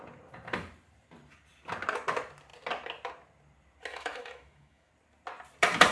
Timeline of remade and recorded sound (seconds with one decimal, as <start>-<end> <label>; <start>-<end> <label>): 0.0-3.9 recorded; 3.9-4.9 remade; 4.9-5.9 recorded